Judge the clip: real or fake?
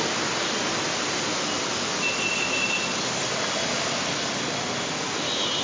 real